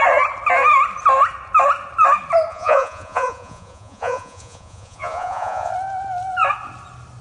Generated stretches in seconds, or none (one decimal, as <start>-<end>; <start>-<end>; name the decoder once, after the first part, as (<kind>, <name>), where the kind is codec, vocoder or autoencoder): 2.5-5.7 (vocoder, Vocos)